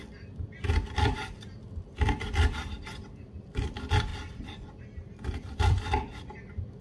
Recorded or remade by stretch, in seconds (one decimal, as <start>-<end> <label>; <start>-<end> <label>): 0.0-4.1 remade; 4.1-4.8 recorded; 4.8-6.8 remade